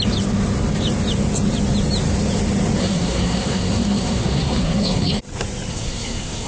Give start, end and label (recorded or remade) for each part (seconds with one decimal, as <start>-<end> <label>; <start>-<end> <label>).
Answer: 0.0-2.8 recorded; 2.8-5.2 remade; 5.2-5.7 recorded; 5.7-6.5 remade